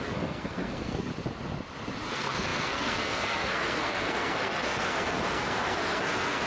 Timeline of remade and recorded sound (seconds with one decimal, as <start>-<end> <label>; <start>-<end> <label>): 0.0-1.1 remade; 1.1-2.1 recorded; 2.1-6.5 remade